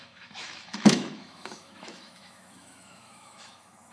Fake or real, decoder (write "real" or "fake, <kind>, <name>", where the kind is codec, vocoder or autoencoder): fake, autoencoder, DAC-VAE